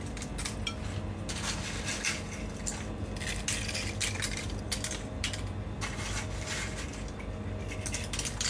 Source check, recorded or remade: recorded